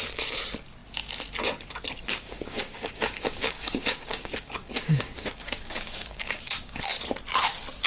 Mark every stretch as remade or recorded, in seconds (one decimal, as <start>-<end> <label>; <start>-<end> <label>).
0.0-2.2 recorded; 2.2-6.8 remade; 6.8-7.9 recorded